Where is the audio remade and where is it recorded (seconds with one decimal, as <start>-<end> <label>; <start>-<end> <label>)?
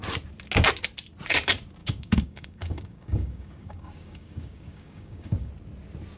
0.0-1.8 recorded; 1.8-5.5 remade; 5.5-6.2 recorded